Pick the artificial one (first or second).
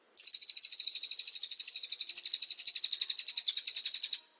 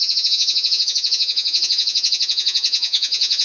second